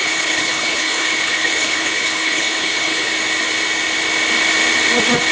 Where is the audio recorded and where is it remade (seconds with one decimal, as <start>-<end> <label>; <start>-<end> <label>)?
0.0-3.1 remade; 3.1-5.3 recorded